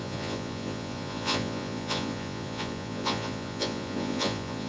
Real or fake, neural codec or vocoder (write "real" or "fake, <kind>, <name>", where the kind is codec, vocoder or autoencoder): fake, vocoder, Vocos